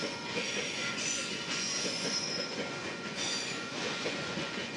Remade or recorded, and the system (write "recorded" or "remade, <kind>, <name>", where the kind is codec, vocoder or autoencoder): remade, vocoder, Vocos